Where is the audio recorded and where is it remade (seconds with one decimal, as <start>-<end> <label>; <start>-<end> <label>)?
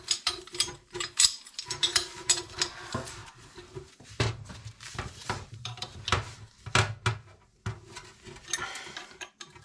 0.0-3.2 remade; 3.2-3.7 recorded; 3.7-5.9 remade; 5.9-9.0 recorded; 9.0-9.6 remade